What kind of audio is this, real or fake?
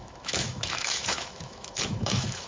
fake